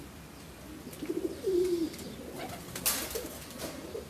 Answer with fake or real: real